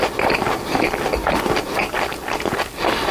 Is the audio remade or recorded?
recorded